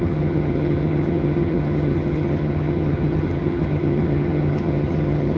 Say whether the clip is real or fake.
fake